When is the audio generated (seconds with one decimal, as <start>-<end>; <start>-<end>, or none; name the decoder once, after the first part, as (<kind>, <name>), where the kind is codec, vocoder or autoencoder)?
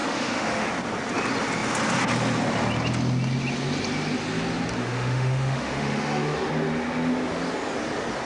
0.0-0.7 (autoencoder, DAC-VAE); 4.8-6.5